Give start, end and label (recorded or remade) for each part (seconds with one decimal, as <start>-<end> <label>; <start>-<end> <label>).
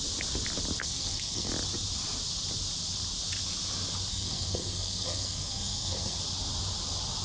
0.0-0.8 recorded; 0.8-1.5 remade; 1.5-4.1 recorded; 4.1-6.2 remade; 6.2-7.2 recorded